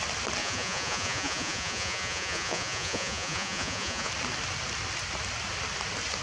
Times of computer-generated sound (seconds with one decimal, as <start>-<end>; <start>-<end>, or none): 0.4-4.1

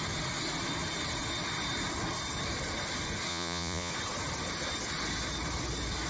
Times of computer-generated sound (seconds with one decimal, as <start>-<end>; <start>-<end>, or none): 3.3-3.9

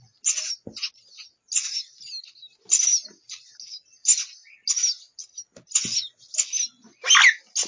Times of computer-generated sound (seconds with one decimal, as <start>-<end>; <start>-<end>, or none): none

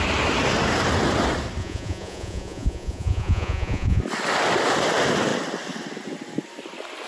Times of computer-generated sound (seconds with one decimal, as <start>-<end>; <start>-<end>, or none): 1.6-4.0

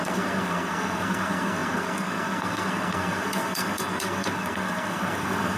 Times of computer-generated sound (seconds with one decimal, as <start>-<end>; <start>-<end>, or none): 0.0-5.6

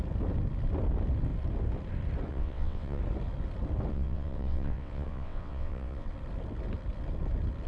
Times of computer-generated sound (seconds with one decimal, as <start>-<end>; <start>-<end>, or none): 2.3-3.0; 3.9-6.1

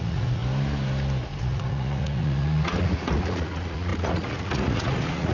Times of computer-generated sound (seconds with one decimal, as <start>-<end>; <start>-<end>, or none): 0.0-0.4; 1.4-5.3